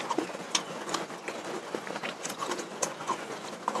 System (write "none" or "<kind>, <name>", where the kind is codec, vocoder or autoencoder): vocoder, Vocos